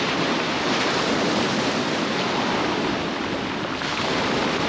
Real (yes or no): yes